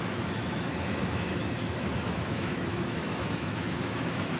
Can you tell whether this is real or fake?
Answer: fake